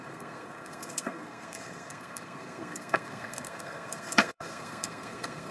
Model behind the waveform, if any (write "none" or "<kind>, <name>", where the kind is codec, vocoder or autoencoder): codec, SNAC